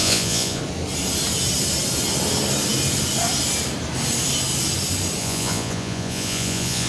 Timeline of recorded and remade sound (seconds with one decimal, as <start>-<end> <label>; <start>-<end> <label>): 0.0-0.6 remade; 0.6-5.2 recorded; 5.2-6.9 remade